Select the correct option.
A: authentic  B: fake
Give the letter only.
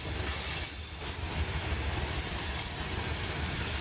A